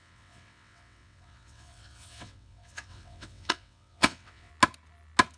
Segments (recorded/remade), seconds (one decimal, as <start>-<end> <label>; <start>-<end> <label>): 0.0-4.5 remade; 4.5-5.4 recorded